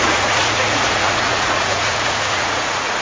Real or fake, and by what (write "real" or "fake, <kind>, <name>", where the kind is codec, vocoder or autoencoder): fake, vocoder, Vocos